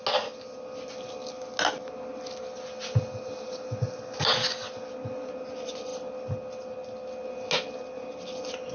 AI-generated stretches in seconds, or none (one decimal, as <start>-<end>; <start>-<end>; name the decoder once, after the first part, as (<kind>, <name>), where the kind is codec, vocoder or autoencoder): none